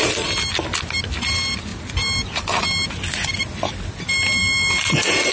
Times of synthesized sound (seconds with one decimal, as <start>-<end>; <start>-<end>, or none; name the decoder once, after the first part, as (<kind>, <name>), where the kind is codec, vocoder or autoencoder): none